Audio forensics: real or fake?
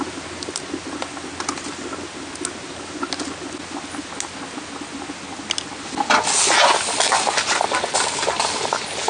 real